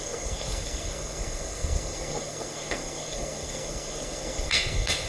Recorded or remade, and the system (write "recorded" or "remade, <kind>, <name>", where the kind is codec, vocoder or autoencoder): remade, codec, SNAC